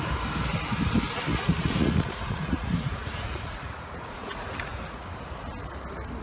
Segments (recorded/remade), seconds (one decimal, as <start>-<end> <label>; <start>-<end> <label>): 0.0-1.3 recorded; 1.3-5.0 remade; 5.0-6.2 recorded